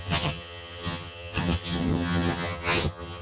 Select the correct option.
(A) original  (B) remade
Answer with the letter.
B